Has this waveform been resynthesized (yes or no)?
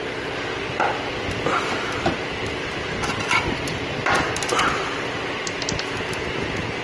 no